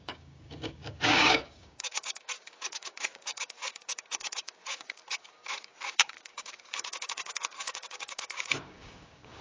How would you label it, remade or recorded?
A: remade